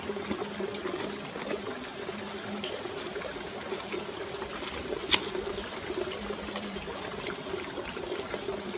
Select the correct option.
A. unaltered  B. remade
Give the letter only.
A